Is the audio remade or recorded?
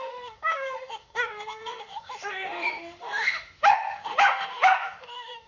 remade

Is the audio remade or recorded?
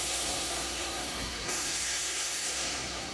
remade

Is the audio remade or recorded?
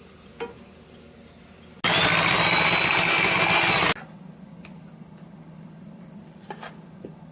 recorded